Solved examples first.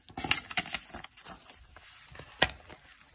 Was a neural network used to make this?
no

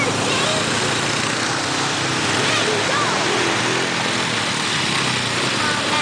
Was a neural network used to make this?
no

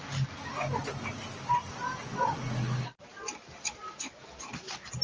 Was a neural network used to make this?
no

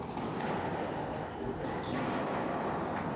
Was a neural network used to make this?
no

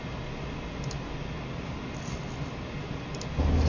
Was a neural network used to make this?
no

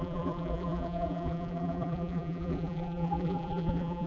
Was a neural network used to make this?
yes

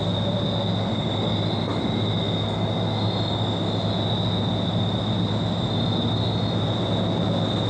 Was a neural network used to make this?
no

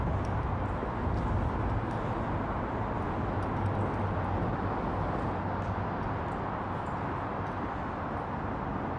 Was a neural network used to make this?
no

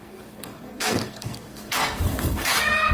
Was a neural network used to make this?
yes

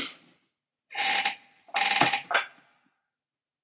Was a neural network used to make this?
no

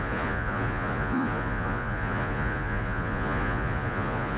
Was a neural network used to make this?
yes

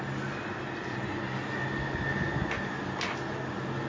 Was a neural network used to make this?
no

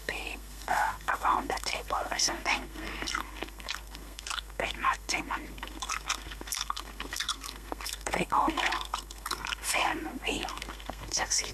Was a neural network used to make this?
yes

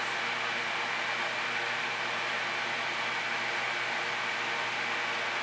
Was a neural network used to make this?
no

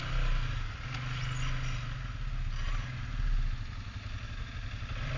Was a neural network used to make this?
no